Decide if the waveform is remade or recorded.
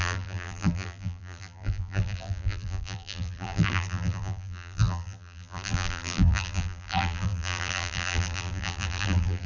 remade